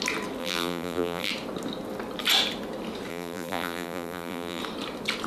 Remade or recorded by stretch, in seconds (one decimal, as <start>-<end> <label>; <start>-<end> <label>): 0.0-0.4 recorded; 0.4-1.3 remade; 1.3-3.1 recorded; 3.1-4.6 remade; 4.6-5.3 recorded